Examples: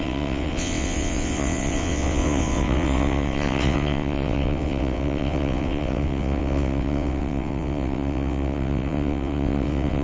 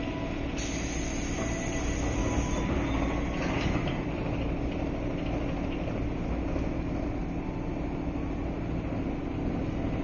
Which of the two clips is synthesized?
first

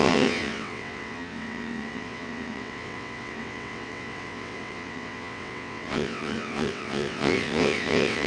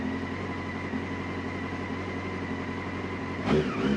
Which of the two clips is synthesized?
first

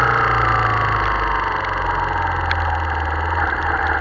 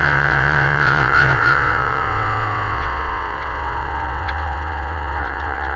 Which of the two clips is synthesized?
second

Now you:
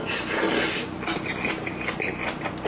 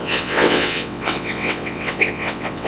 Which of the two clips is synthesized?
second